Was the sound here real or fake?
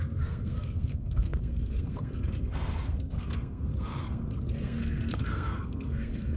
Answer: fake